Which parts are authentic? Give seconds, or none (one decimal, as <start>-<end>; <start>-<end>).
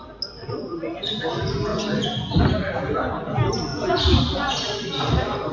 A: 0.0-0.7; 1.2-1.7; 2.4-3.7; 5.1-5.5